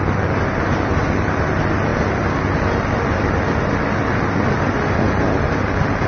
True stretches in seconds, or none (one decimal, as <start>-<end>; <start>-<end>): 0.0-6.1